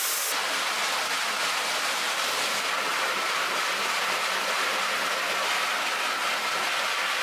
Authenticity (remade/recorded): recorded